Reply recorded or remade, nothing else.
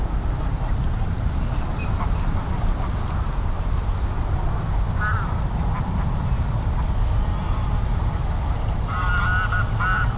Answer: recorded